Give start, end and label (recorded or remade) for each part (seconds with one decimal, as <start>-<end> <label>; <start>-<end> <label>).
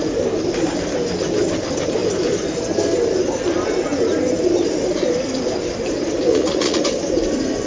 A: 0.0-6.3 recorded; 6.3-6.8 remade; 6.8-7.7 recorded